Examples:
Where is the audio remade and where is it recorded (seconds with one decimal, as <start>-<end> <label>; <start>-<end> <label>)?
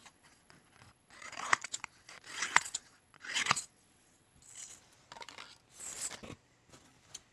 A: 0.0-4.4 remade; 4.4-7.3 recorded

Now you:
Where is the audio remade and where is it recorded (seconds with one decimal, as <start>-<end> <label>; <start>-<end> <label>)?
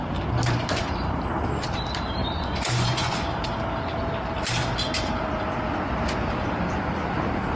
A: 0.0-2.2 recorded; 2.2-3.3 remade; 3.3-7.6 recorded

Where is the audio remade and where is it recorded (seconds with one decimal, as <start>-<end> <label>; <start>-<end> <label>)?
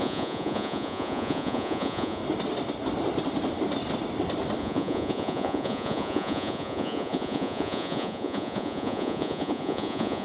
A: 0.0-2.2 remade; 2.2-4.6 recorded; 4.6-10.2 remade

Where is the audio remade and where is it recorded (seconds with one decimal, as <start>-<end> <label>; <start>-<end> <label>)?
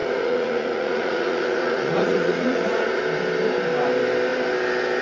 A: 0.0-3.0 remade; 3.0-5.0 recorded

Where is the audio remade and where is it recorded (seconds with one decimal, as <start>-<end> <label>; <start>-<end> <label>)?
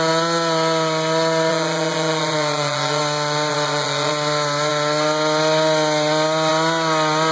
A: 0.0-1.5 recorded; 1.5-3.0 remade; 3.0-3.5 recorded; 3.5-4.1 remade; 4.1-7.3 recorded